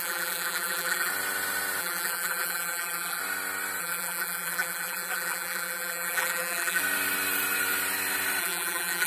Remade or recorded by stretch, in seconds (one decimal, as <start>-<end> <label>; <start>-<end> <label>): 0.0-1.1 remade; 1.1-1.8 recorded; 1.8-3.2 remade; 3.2-3.8 recorded; 3.8-6.8 remade; 6.8-8.4 recorded; 8.4-9.1 remade